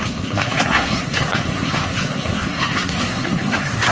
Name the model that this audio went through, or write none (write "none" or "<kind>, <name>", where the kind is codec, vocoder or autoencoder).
codec, SNAC